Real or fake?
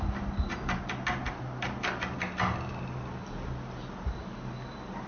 real